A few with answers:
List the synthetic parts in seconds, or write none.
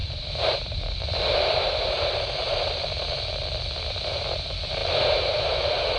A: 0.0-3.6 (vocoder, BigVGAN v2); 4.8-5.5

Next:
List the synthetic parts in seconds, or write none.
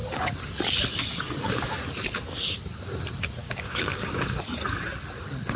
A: 3.4-4.4 (codec, DAC)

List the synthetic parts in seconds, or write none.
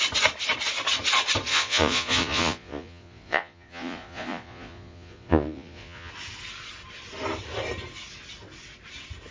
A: 1.5-6.1 (vocoder, Vocos)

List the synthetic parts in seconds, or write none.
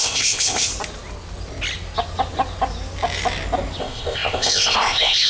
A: 0.0-0.7 (codec, ZipCodec); 3.8-5.3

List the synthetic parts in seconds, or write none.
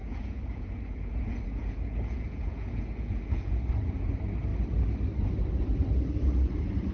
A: 0.0-4.1 (vocoder, Vocos)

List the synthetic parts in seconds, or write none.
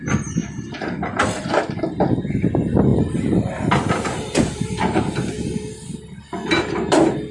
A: 0.4-1.8 (vocoder, BigVGAN v2); 2.9-5.0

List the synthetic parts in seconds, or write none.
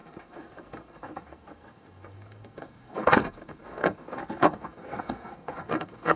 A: 0.0-6.2 (codec, SNAC)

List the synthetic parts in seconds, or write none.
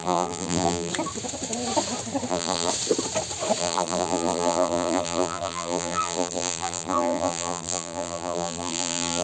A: 0.0-0.9 (vocoder, BigVGAN v2); 2.3-2.7; 3.6-9.2